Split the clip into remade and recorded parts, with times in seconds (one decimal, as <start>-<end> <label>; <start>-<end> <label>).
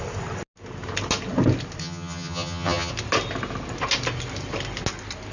0.0-1.8 recorded; 1.8-2.9 remade; 2.9-5.3 recorded